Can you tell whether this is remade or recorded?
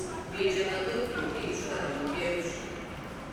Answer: remade